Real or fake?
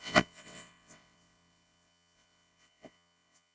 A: fake